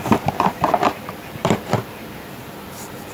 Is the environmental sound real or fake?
fake